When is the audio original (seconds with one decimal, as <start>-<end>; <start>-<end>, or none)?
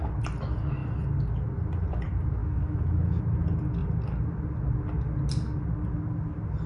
0.0-2.4; 3.2-6.7